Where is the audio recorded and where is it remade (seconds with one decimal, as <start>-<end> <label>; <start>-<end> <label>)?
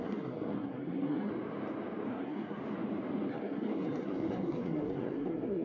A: 0.0-1.3 remade; 1.3-2.1 recorded; 2.1-2.6 remade; 2.6-3.3 recorded; 3.3-5.6 remade